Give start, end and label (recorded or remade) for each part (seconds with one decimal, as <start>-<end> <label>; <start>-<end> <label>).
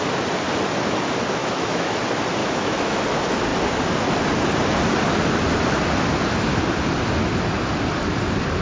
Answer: 0.0-1.4 recorded; 1.4-2.0 remade; 2.0-2.4 recorded; 2.4-3.0 remade; 3.0-8.6 recorded